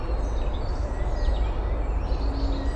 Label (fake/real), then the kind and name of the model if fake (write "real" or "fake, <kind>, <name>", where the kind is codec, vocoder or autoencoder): real